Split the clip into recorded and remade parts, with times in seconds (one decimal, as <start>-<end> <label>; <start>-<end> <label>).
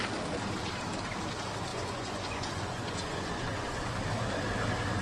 0.0-1.7 recorded; 1.7-3.9 remade; 3.9-5.0 recorded